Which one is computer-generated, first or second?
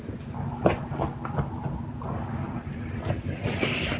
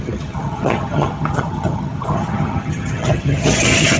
second